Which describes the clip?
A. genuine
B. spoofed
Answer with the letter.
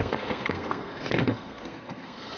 B